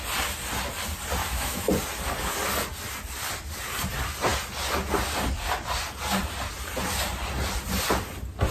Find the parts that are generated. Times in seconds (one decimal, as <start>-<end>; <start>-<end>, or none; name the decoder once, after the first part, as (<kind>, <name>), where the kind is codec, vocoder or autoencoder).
1.2-1.7 (autoencoder, DAC-VAE)